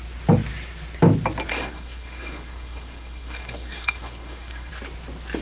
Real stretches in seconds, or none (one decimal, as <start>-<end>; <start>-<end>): 0.0-1.5; 4.7-5.4